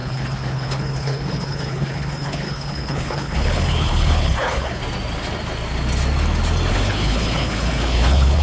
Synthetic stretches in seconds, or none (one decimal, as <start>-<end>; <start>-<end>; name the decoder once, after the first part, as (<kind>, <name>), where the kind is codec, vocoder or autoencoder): 0.0-4.8 (codec, HILCodec); 6.7-8.4